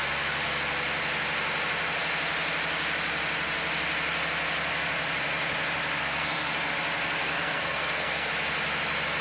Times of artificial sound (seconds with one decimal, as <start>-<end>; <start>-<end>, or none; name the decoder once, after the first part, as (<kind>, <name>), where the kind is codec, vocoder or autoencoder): 6.0-6.7 (codec, SNAC); 7.2-8.3